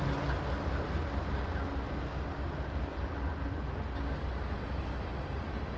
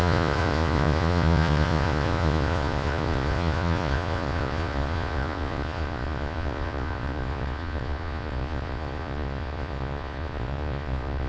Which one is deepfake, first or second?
second